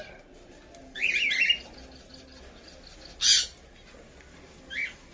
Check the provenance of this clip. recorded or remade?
recorded